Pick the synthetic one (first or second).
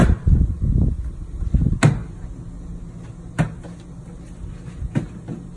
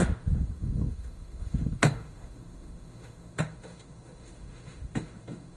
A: second